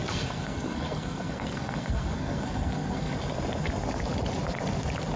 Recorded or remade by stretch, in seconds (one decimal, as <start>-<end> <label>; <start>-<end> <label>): 0.0-3.1 remade; 3.1-5.2 recorded